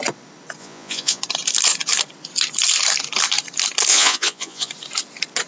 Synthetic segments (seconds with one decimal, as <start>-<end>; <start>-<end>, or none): 0.6-1.2; 3.9-4.7